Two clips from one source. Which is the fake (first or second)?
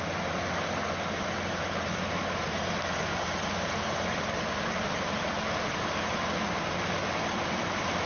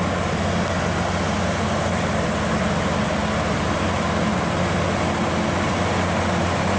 first